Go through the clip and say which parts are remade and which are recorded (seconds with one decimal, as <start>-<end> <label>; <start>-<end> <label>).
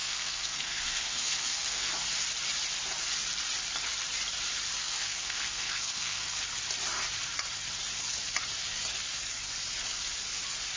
0.0-1.9 remade; 1.9-4.8 recorded; 4.8-6.4 remade; 6.4-10.8 recorded